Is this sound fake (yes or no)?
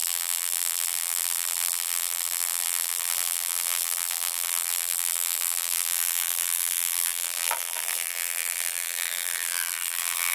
yes